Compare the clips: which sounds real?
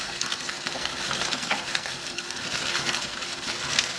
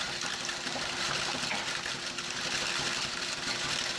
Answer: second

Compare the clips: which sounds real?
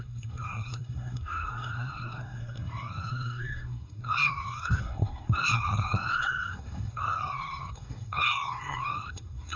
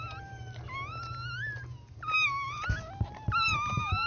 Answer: second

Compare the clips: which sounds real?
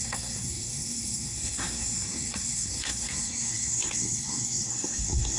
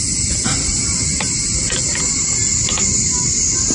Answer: second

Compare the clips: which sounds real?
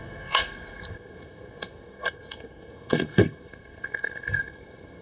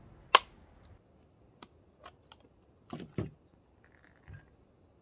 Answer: second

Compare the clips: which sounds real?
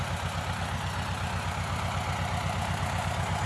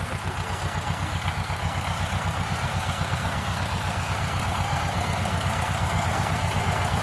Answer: first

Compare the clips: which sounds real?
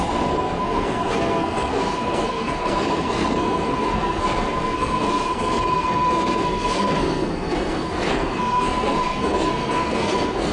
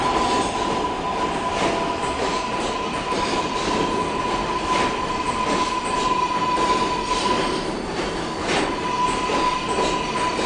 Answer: second